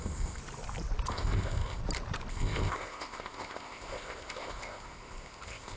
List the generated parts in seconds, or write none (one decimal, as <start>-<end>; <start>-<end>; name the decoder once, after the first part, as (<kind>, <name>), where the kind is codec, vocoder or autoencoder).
0.0-0.4 (codec, ZipCodec); 1.1-1.8; 2.3-5.8